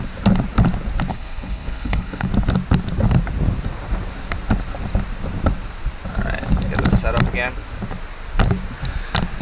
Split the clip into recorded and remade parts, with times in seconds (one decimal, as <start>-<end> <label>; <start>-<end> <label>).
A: 0.0-1.1 recorded; 1.1-2.3 remade; 2.3-9.4 recorded